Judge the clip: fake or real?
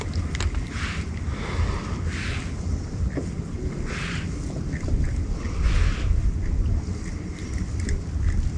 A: real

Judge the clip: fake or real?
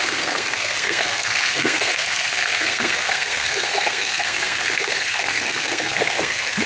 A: fake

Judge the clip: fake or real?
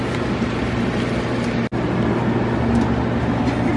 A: real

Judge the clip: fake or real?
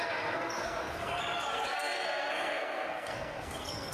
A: fake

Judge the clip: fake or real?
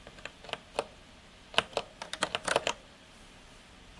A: real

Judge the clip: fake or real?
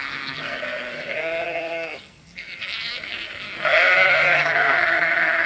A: fake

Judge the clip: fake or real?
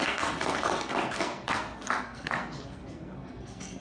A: fake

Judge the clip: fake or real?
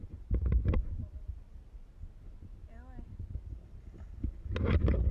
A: real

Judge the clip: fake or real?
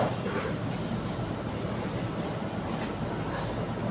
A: real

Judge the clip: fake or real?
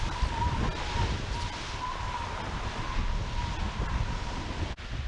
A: real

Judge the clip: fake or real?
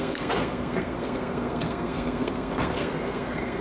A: fake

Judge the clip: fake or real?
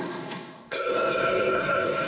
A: fake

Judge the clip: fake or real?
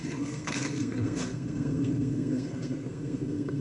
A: fake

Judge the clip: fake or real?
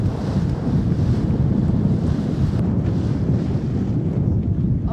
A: real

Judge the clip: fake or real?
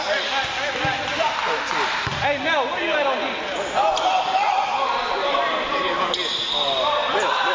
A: real